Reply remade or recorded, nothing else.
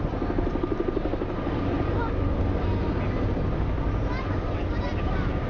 recorded